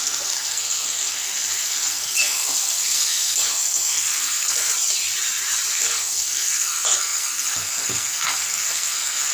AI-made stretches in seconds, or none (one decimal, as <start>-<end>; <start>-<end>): 0.0-4.7; 5.7-9.3